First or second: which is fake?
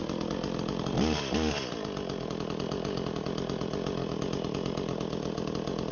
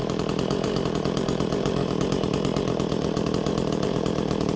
second